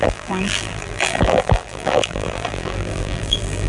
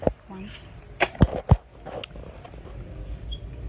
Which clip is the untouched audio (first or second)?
second